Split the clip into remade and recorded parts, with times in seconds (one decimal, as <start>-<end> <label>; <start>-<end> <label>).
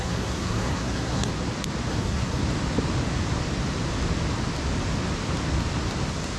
0.0-1.3 remade; 1.3-1.9 recorded; 1.9-2.4 remade; 2.4-6.4 recorded